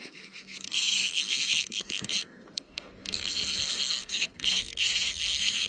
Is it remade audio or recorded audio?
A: remade